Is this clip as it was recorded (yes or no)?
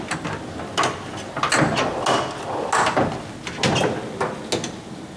yes